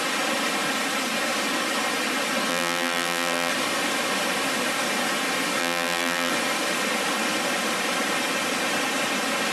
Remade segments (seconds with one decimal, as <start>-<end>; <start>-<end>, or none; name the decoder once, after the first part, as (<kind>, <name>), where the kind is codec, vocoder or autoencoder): 2.5-3.5 (vocoder, BigVGAN v2); 5.6-6.3